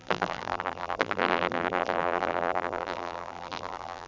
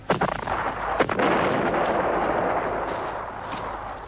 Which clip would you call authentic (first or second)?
second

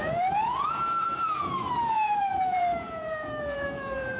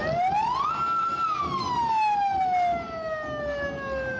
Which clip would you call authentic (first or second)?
second